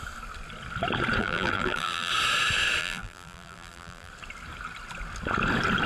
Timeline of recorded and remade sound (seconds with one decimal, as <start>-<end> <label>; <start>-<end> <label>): 0.0-1.2 recorded; 1.2-2.1 remade; 2.1-2.8 recorded; 2.8-4.1 remade; 4.1-5.9 recorded

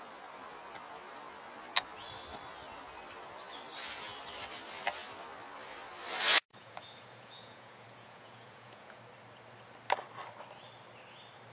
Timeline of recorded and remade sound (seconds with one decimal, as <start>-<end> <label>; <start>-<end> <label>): 0.0-6.5 recorded; 6.5-9.0 remade; 9.0-11.5 recorded

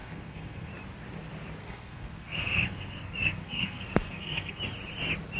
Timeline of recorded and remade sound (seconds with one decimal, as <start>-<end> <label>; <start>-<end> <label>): 0.0-0.7 remade; 0.7-1.6 recorded; 1.6-4.6 remade; 4.6-5.4 recorded

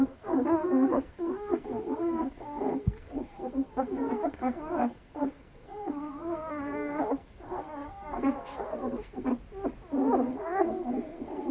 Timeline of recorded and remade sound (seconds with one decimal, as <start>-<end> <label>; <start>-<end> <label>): 0.0-9.3 remade; 9.3-10.3 recorded; 10.3-11.5 remade

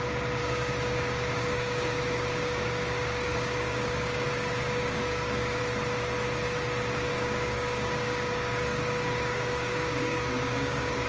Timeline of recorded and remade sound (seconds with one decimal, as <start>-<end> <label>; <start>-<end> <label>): 0.0-0.4 recorded; 0.4-5.6 remade; 5.6-7.1 recorded; 7.1-11.1 remade

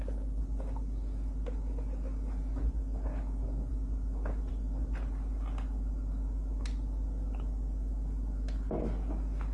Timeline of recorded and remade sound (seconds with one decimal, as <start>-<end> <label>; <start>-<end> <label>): 0.0-9.5 recorded

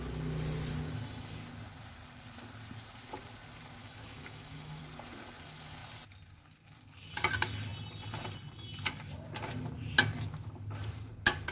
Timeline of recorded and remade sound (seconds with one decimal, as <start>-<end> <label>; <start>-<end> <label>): 0.0-3.8 recorded; 3.8-4.8 remade; 4.8-11.5 recorded

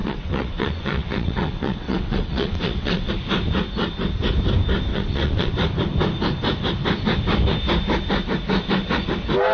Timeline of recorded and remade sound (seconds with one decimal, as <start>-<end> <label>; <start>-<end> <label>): 0.0-3.1 remade; 3.1-4.9 recorded; 4.9-5.5 remade; 5.5-9.5 recorded